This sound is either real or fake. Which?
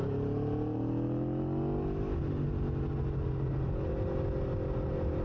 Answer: real